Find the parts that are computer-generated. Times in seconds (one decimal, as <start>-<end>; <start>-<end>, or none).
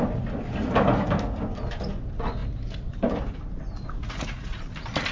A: 4.0-4.6